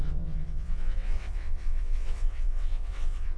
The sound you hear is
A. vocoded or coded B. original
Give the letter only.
A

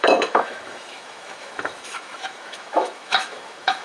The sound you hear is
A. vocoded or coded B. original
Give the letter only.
A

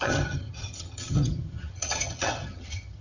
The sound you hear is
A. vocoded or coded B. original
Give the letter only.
A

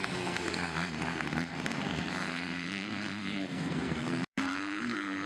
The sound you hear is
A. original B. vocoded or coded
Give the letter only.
B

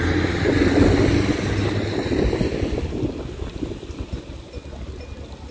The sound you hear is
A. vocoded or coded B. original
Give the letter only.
B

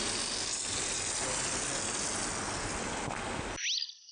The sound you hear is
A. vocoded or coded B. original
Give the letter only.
B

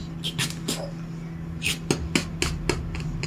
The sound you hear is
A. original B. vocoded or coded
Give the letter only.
A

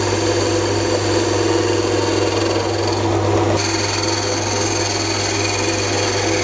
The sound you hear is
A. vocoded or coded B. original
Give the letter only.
B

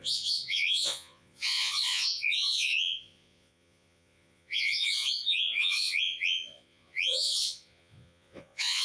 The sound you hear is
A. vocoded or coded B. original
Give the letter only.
A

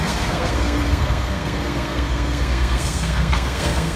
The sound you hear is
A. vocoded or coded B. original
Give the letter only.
A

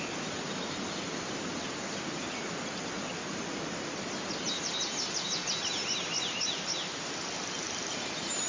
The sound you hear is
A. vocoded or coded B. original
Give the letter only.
B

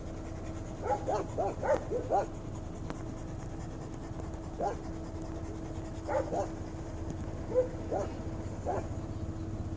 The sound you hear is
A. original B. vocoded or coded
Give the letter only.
A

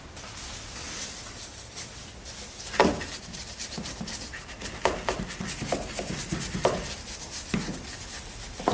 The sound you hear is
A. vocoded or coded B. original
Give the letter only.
B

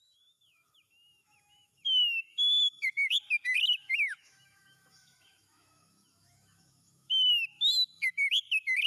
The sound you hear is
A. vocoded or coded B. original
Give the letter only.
A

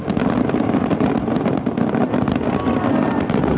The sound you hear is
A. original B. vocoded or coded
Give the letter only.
A